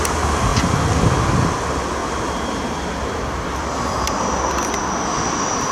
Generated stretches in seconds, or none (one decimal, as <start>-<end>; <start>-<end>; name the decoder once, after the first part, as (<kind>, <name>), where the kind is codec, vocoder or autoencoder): 2.0-4.8 (vocoder, BigVGAN v2)